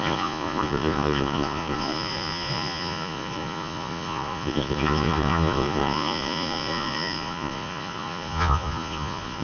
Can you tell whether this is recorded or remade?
remade